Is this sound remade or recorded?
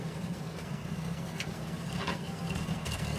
remade